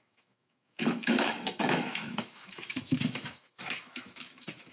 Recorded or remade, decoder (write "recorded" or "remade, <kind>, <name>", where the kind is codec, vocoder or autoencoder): remade, autoencoder, DAC-VAE